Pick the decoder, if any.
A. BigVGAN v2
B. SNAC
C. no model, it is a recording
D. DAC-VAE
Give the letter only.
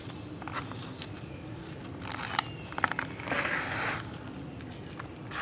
C